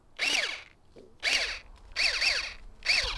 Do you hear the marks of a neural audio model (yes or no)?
no